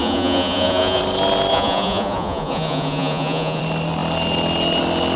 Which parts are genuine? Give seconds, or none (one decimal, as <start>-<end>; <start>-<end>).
1.0-1.5; 3.6-5.2